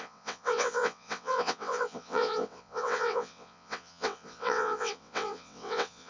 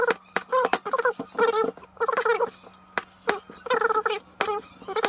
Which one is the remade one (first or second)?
first